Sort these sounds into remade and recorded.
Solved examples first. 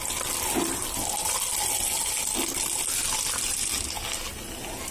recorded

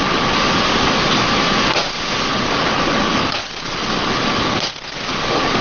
remade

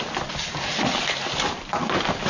recorded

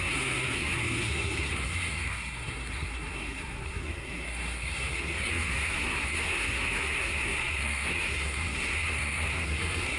remade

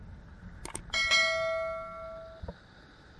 recorded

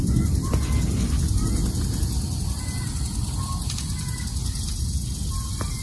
recorded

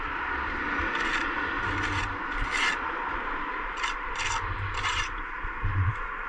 recorded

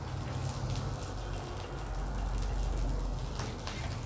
recorded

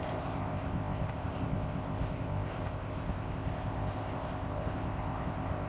remade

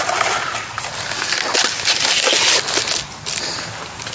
recorded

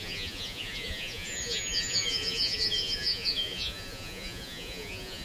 remade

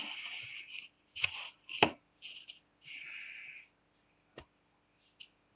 recorded